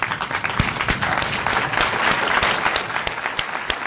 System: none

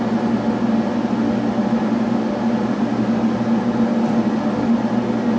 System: none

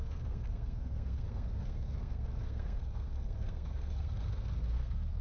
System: codec, SNAC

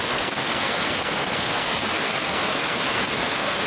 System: codec, SNAC